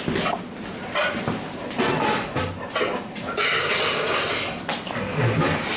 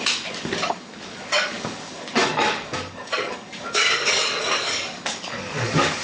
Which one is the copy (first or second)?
second